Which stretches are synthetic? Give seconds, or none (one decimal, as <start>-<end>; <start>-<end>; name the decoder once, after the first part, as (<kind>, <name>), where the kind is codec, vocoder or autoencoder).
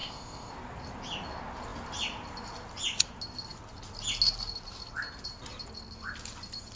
0.0-0.5 (codec, ZipCodec)